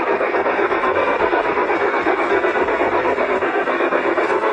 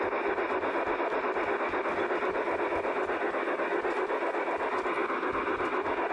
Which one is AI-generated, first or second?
first